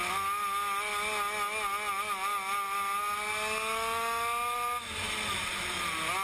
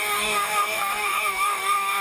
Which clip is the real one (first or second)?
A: first